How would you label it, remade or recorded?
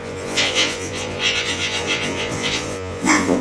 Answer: remade